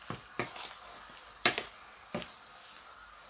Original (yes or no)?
yes